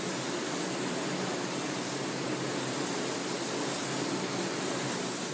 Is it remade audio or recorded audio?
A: recorded